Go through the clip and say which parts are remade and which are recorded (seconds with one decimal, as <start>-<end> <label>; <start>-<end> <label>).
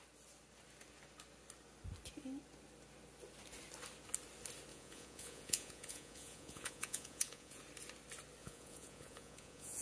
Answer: 0.0-4.7 recorded; 4.7-7.6 remade; 7.6-8.4 recorded; 8.4-9.8 remade